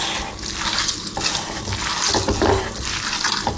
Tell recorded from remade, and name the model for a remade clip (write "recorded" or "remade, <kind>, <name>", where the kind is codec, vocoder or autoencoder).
recorded